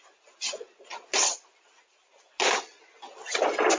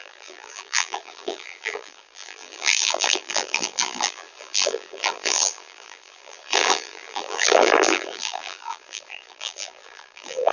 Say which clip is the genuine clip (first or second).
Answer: first